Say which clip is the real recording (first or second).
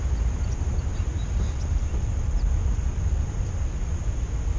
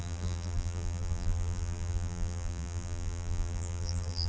first